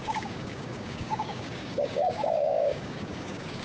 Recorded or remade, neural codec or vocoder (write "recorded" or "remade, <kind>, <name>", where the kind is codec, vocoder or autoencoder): remade, codec, DAC